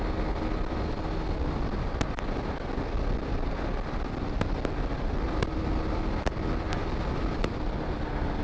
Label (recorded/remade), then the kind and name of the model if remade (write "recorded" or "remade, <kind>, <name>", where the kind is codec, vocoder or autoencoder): recorded